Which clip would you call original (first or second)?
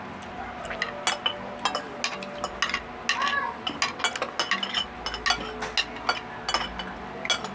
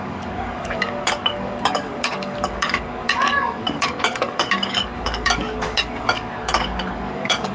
first